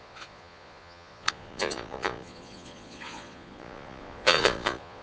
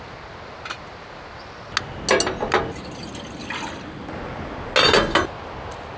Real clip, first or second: second